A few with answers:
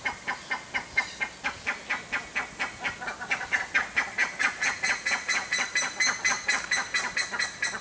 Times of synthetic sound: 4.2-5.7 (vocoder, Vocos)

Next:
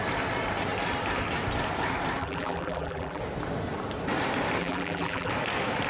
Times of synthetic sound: 2.2-3.2 (vocoder, BigVGAN v2); 4.6-5.3

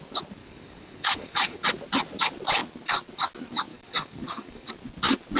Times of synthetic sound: 0.4-1.7 (codec, DAC); 3.7-4.7